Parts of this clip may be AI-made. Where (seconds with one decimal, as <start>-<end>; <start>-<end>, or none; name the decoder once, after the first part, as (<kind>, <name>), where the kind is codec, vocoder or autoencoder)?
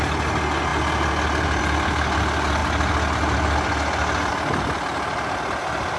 none